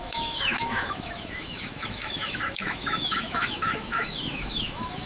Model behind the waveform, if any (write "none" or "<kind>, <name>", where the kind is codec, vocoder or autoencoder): autoencoder, DAC-VAE